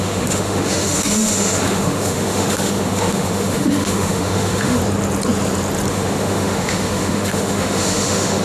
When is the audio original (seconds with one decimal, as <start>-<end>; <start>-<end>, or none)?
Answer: 4.8-5.9